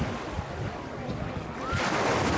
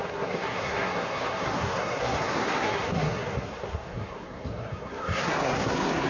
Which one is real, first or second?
first